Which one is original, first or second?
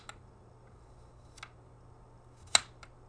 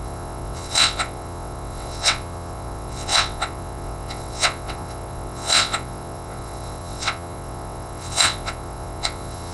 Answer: first